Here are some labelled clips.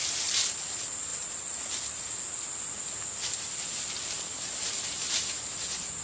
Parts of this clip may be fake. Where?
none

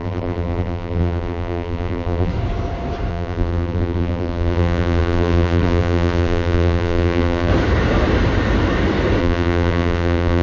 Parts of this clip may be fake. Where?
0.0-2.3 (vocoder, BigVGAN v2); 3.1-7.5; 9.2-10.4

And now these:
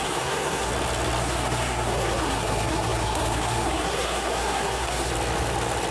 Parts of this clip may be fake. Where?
0.0-0.7 (codec, SNAC); 1.2-5.1

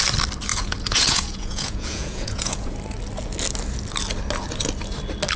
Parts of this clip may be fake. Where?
0.5-2.7 (vocoder, Vocos)